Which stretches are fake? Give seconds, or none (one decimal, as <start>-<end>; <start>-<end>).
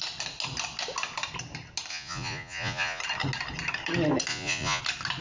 1.9-3.0; 4.3-4.8